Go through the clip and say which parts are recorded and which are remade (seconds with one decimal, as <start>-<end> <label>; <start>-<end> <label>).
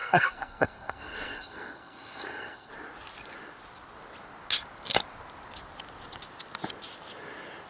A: 0.0-2.7 remade; 2.7-7.7 recorded